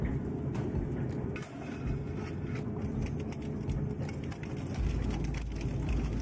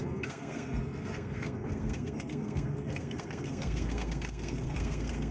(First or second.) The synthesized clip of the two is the second